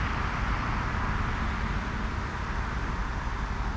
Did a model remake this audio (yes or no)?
no